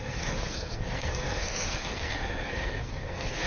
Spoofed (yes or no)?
yes